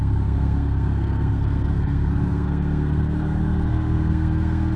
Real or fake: fake